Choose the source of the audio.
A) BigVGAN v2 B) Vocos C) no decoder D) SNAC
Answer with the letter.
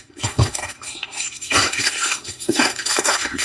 D